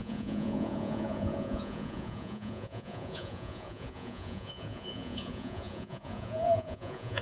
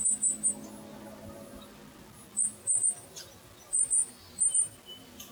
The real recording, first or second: second